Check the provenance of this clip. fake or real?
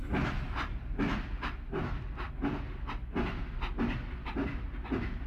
real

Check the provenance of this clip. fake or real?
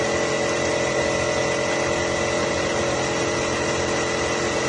real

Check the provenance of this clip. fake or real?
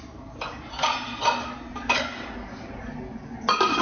real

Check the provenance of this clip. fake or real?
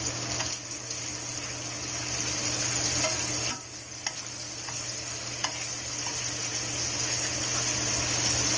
real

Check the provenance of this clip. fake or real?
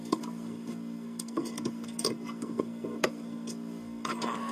fake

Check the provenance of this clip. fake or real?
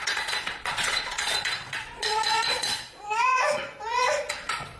fake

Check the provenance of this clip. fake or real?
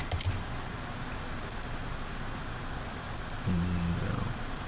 real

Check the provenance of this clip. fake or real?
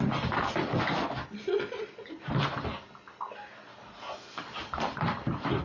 real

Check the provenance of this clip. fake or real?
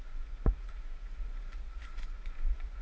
fake